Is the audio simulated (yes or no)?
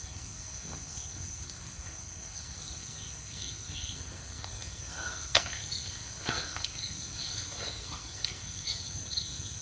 yes